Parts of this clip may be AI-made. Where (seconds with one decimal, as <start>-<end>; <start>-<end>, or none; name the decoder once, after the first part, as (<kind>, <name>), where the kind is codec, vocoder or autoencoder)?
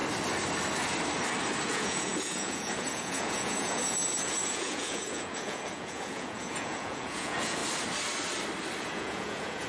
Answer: 1.7-7.6 (vocoder, Vocos); 8.8-9.7